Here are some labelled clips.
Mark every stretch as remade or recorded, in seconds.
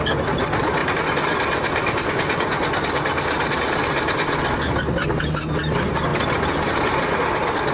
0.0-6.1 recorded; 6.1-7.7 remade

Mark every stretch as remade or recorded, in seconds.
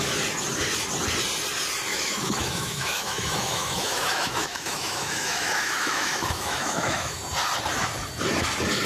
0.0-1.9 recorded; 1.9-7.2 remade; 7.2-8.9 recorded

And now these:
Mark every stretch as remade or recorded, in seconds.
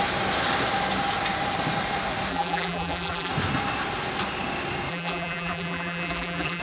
0.0-2.3 recorded; 2.3-3.3 remade; 3.3-4.9 recorded; 4.9-6.6 remade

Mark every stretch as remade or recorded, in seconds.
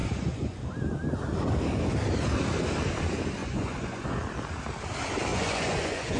0.0-0.6 remade; 0.6-3.4 recorded; 3.4-4.2 remade; 4.2-5.3 recorded; 5.3-6.2 remade